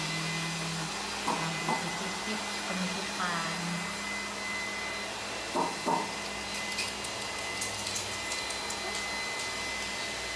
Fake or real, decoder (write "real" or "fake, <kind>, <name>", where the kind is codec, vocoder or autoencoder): real